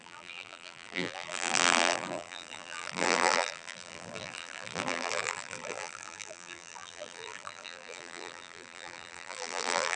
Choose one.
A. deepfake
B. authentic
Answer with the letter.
A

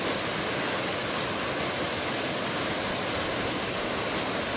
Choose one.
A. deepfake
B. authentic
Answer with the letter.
B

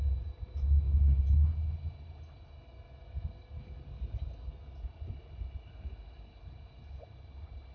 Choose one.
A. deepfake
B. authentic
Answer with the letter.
B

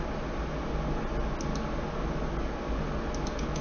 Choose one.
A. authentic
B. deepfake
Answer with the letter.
A